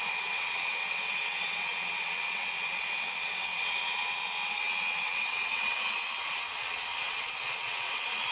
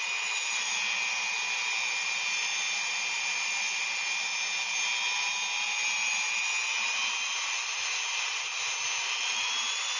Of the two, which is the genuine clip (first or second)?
second